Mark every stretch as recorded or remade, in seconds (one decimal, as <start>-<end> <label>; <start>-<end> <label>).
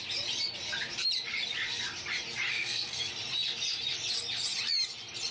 0.0-2.5 recorded; 2.5-3.0 remade; 3.0-5.3 recorded